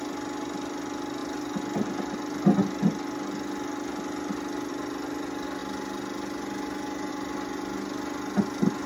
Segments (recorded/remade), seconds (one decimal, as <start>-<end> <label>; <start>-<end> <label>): 0.0-8.9 recorded